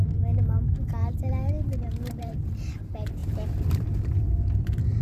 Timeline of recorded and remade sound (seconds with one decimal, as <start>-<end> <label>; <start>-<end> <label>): 0.0-1.0 recorded; 1.0-2.7 remade; 2.7-3.2 recorded; 3.2-5.0 remade